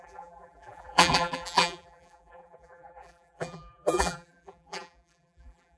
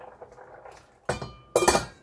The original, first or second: second